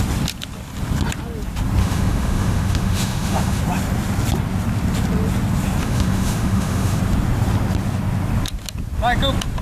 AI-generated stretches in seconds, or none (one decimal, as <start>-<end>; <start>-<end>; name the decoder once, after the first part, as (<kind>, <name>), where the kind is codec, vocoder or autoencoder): 1.8-3.6 (autoencoder, DAC-VAE); 5.8-7.0